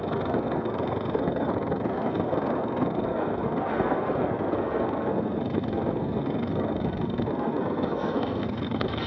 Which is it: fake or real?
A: fake